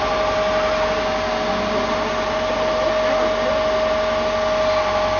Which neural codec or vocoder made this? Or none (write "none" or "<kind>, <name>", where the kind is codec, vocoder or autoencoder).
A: none